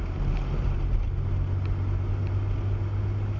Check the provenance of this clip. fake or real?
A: real